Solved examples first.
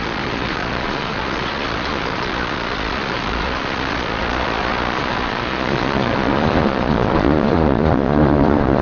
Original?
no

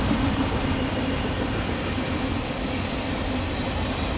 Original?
no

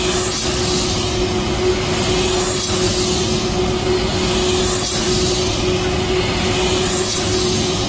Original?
yes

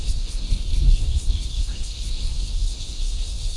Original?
no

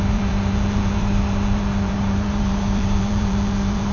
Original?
no